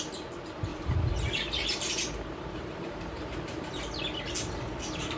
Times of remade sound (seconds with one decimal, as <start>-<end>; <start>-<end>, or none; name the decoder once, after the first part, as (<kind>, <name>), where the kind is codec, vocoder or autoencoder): 0.7-3.8 (vocoder, BigVGAN v2)